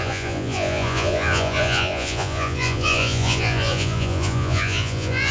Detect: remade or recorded remade